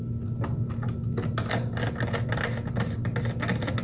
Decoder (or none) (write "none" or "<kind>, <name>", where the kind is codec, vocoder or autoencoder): none